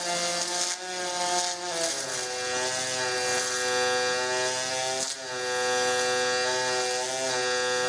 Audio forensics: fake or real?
real